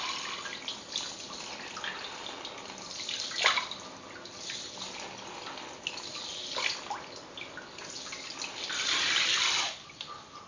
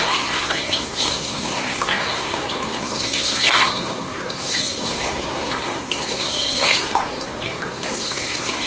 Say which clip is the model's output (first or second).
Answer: second